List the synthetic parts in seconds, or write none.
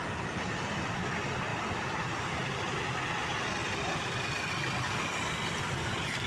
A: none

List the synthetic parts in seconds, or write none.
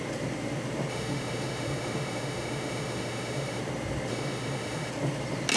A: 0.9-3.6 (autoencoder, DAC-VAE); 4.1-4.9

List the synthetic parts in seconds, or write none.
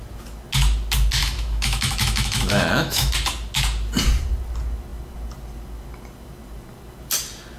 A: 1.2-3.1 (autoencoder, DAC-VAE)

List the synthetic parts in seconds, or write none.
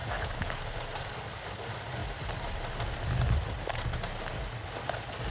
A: 0.0-0.6 (autoencoder, DAC-VAE)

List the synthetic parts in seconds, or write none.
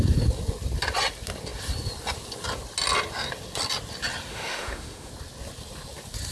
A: 4.3-5.1 (autoencoder, DAC-VAE)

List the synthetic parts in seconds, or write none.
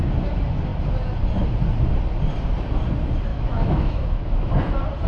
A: 3.3-4.5 (autoencoder, DAC-VAE)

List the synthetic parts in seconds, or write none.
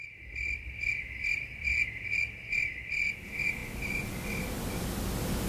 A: none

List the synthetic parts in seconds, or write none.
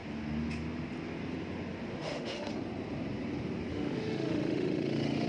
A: 1.9-2.5 (autoencoder, DAC-VAE); 3.7-5.3